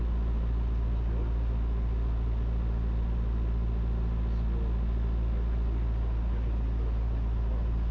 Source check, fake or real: real